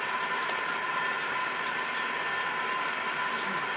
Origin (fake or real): real